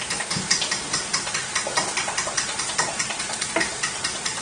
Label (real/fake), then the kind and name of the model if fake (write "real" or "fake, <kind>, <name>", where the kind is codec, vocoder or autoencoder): real